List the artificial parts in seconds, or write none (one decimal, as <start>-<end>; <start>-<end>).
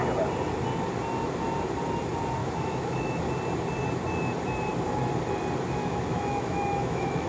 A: 2.4-3.2; 5.8-7.3